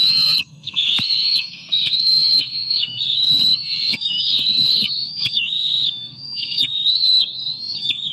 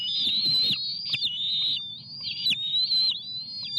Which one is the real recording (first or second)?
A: second